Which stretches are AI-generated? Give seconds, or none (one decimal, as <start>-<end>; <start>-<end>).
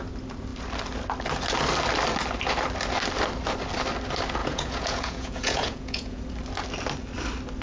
4.4-6.2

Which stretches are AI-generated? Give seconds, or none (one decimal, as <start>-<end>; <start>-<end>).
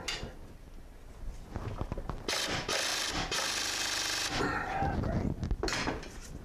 2.9-4.4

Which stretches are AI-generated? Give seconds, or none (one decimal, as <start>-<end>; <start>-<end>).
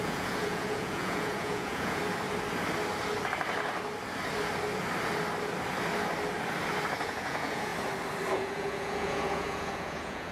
0.0-2.0; 7.0-7.7; 8.3-10.3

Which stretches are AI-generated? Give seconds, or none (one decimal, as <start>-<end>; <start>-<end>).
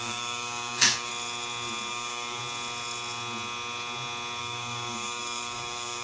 0.0-1.1; 1.9-2.4; 4.4-6.0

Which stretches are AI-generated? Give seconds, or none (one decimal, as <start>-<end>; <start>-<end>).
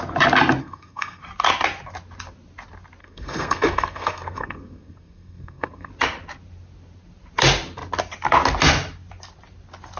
0.6-1.2; 3.0-5.9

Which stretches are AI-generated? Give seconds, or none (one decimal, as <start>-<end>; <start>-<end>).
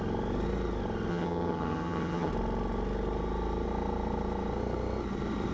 1.1-2.3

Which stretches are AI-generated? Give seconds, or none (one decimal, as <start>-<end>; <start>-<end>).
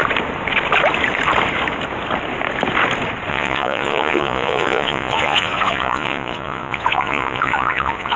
3.3-8.2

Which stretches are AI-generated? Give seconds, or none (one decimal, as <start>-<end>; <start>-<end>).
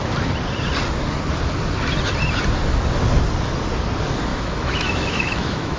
4.3-5.8